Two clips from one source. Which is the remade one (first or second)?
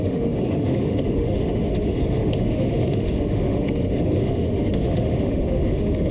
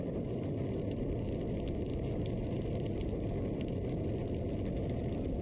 first